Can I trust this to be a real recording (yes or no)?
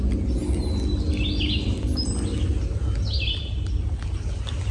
yes